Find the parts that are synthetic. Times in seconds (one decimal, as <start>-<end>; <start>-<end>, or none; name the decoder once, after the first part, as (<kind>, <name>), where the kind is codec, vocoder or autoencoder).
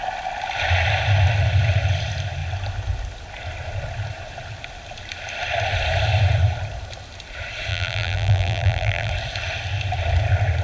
7.7-9.1 (vocoder, BigVGAN v2)